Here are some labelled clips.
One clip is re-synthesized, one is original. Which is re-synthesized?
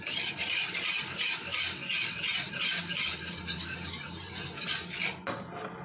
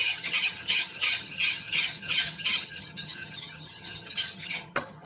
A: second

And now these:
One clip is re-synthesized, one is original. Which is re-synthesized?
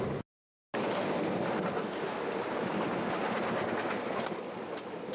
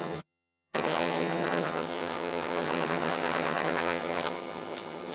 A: second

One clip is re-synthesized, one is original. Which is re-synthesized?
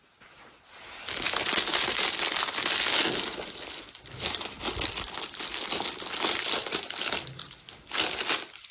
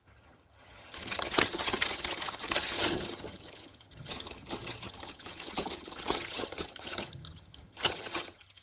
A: second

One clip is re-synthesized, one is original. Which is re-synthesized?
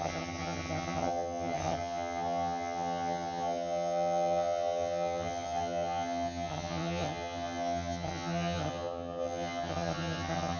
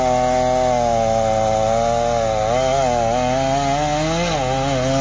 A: first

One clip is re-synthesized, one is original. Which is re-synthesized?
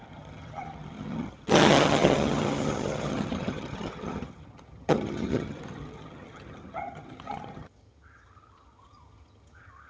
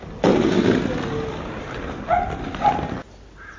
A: first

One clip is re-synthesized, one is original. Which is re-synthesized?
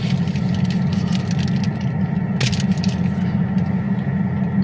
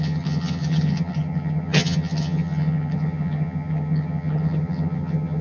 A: second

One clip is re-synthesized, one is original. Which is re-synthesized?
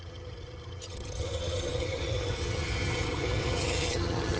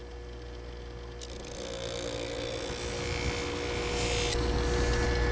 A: first